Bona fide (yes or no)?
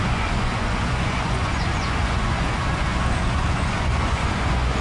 no